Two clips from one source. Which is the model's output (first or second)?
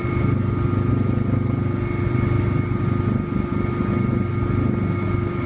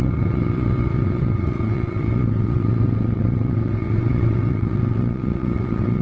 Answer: second